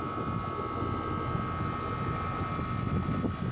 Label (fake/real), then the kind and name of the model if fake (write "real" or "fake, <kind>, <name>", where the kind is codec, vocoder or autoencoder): real